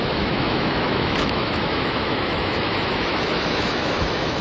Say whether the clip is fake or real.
fake